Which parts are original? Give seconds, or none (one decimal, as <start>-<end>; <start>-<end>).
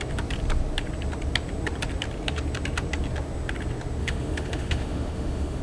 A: 0.0-4.0